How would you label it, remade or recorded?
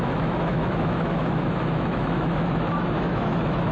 remade